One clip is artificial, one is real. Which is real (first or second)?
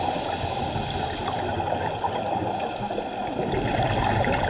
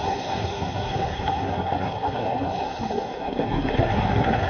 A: first